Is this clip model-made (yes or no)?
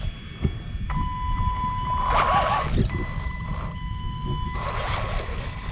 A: no